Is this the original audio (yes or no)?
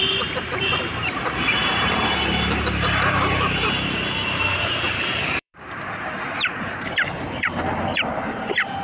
no